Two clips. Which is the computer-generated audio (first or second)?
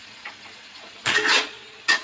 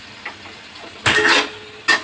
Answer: first